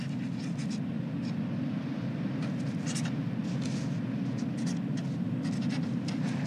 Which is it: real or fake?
real